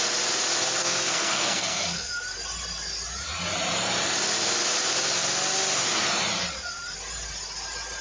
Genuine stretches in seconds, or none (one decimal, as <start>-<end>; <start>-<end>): 0.0-0.8; 2.1-8.0